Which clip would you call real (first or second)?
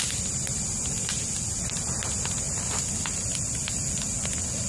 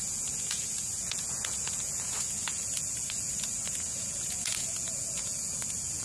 first